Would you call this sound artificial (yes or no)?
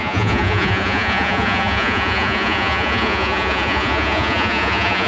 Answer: yes